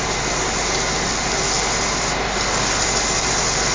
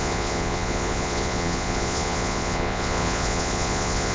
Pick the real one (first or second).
first